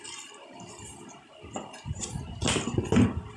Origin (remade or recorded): recorded